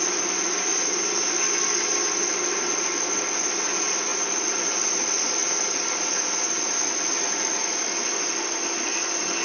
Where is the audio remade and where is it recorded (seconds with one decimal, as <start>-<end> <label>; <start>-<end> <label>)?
0.0-4.1 recorded; 4.1-4.7 remade; 4.7-9.4 recorded